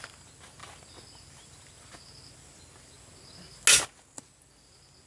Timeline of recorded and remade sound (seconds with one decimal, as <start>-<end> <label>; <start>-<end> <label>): 0.0-5.1 recorded